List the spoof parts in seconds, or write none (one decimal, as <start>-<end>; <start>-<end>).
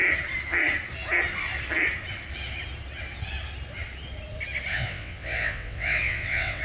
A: 4.7-6.6